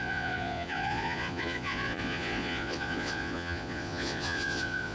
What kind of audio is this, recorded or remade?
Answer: remade